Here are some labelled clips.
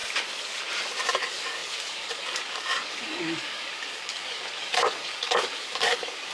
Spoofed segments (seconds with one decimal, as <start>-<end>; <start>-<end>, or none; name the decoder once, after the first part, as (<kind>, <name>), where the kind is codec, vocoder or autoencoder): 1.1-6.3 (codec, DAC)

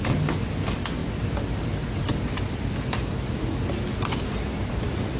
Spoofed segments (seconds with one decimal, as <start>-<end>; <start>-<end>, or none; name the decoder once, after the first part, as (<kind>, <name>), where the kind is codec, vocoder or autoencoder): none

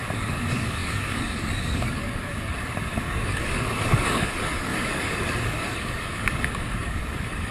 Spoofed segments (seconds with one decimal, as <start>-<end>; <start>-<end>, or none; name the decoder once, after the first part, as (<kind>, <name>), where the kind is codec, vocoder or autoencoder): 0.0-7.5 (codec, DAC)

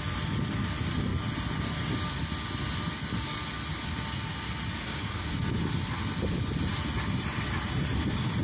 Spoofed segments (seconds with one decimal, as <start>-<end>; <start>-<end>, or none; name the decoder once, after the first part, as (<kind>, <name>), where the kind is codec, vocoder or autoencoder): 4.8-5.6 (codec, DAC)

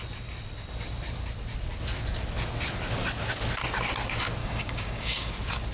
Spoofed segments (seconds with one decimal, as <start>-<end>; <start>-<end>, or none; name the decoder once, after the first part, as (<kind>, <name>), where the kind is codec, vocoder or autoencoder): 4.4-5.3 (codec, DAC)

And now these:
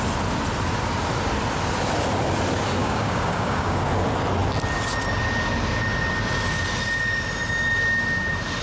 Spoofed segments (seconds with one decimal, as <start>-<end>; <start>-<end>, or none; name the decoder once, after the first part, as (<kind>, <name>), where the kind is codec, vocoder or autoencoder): 2.8-3.8 (codec, DAC)